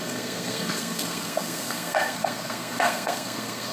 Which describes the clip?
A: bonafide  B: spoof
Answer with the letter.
B